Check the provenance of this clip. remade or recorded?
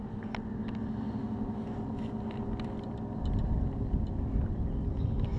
recorded